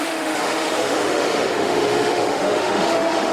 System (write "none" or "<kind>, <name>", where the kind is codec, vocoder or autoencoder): autoencoder, DAC-VAE